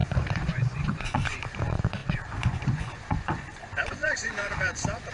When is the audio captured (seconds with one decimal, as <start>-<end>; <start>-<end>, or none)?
none